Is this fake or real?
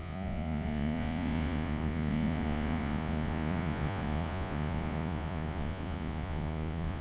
fake